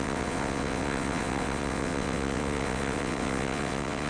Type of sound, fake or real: fake